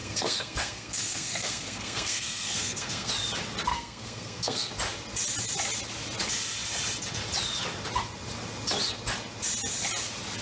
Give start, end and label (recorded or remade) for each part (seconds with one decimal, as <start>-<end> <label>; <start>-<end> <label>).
0.0-3.1 remade; 3.1-3.7 recorded; 3.7-4.7 remade; 4.7-10.4 recorded